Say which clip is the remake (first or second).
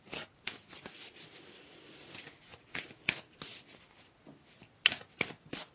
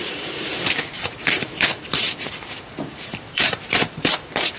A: second